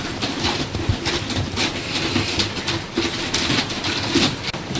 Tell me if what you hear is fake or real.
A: real